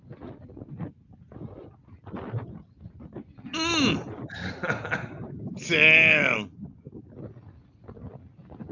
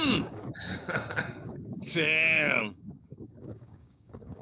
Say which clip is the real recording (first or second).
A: first